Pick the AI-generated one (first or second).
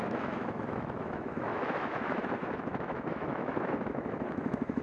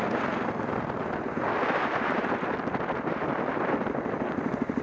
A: first